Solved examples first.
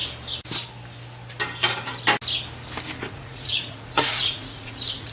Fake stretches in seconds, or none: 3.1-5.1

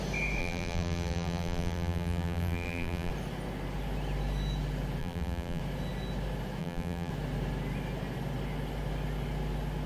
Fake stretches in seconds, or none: 0.4-3.1; 5.0-5.6; 6.6-7.1